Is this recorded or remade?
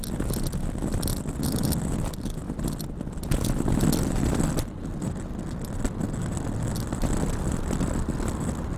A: recorded